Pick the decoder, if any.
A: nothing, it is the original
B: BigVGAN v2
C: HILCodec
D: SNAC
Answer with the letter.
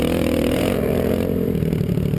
B